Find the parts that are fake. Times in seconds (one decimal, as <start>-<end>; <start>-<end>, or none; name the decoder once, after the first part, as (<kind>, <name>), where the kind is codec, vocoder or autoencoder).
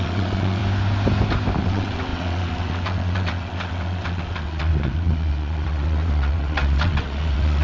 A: 0.0-0.6 (vocoder, WaveNeXt); 1.6-7.6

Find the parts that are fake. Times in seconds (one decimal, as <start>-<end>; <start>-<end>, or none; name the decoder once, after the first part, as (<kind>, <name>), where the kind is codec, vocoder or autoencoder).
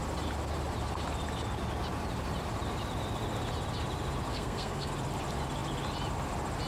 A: 4.3-4.9 (codec, SNAC)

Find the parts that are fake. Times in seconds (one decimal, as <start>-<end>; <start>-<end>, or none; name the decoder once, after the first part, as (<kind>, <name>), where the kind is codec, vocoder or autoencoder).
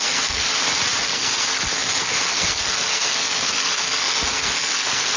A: 0.0-0.5 (codec, SNAC); 1.0-5.2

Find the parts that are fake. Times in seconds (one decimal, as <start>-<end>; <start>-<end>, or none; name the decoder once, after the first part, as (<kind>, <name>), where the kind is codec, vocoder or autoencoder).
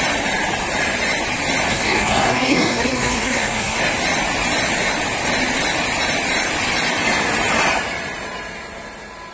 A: 1.7-3.8 (codec, SNAC)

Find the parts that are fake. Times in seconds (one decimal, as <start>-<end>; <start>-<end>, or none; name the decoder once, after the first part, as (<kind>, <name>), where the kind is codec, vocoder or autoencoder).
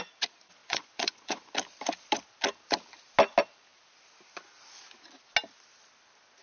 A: 0.6-1.5 (vocoder, Vocos)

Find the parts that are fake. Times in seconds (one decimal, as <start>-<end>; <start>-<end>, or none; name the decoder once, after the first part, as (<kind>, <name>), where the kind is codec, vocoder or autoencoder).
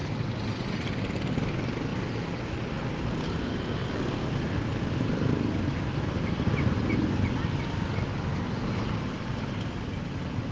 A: none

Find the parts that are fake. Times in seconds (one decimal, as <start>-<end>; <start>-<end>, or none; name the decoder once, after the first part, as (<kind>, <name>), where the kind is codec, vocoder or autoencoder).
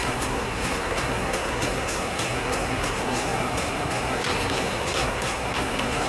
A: 0.0-6.1 (codec, SNAC)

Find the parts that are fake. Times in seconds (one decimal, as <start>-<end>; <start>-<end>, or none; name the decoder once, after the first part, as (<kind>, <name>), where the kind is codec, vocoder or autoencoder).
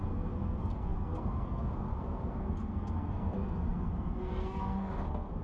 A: 0.0-5.4 (codec, SNAC)